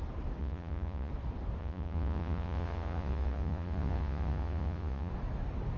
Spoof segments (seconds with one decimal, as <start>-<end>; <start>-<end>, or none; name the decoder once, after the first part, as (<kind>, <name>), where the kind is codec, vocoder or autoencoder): 0.4-1.1 (vocoder, Vocos); 1.6-5.1